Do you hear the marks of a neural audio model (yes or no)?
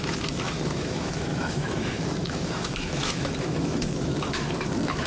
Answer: yes